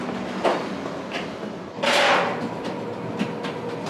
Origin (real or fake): real